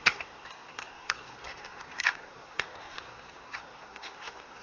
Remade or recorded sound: remade